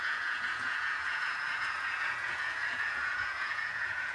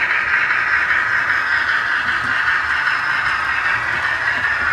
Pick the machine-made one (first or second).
first